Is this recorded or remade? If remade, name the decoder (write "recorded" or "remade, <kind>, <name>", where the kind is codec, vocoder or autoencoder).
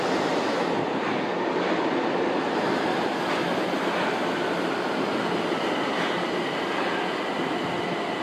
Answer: recorded